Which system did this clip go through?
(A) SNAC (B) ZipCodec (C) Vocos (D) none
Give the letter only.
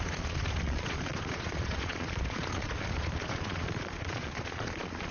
C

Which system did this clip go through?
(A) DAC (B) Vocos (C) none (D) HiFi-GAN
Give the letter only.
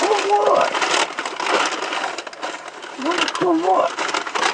C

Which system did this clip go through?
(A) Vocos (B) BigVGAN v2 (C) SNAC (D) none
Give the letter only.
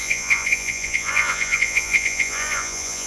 A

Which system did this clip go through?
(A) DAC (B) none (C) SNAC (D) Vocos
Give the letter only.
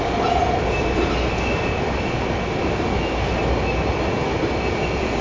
B